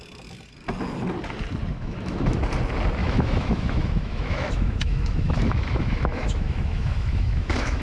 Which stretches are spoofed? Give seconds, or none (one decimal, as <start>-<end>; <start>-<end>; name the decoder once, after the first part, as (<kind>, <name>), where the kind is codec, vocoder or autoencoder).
1.7-2.4 (autoencoder, DAC-VAE); 3.0-7.8